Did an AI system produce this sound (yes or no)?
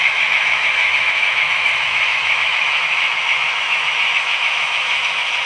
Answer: yes